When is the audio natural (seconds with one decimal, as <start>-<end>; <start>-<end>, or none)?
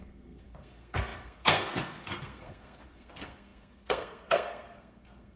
none